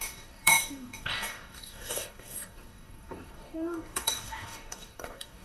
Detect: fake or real fake